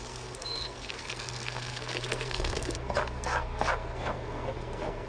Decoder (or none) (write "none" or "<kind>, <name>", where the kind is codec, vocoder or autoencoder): codec, SNAC